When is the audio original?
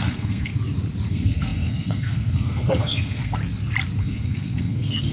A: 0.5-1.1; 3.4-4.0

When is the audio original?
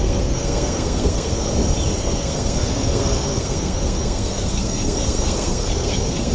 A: 1.5-2.0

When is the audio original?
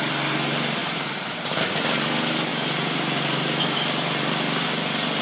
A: 0.0-0.8; 1.6-2.5; 3.6-5.2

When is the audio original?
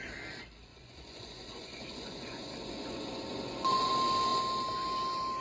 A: 0.0-0.7; 3.9-5.4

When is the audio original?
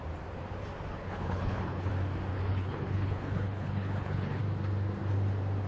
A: 0.0-0.9; 1.9-2.3; 4.4-5.7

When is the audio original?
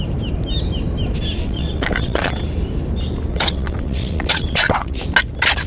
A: 0.0-1.4; 2.4-3.3; 5.0-5.7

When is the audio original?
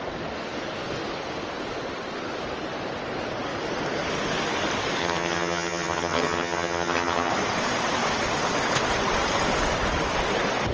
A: 0.0-5.0; 7.3-10.7